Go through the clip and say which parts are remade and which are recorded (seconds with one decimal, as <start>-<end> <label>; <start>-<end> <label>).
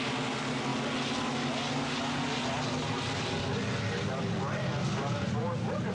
0.0-5.9 recorded